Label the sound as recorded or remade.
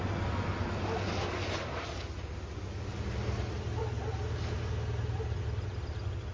recorded